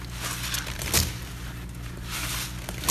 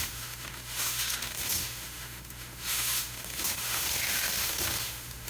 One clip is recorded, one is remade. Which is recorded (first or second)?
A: first